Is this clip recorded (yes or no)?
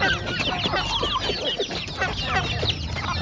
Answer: yes